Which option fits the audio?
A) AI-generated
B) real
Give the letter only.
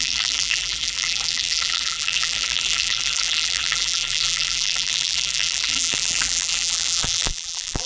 A